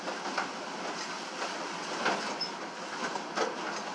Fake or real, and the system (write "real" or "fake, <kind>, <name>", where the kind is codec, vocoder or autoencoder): real